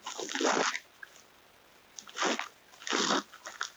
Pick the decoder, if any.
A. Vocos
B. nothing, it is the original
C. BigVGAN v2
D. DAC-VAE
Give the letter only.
B